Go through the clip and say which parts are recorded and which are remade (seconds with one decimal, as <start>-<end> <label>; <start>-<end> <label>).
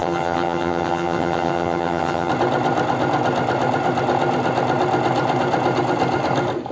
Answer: 0.0-2.3 remade; 2.3-6.7 recorded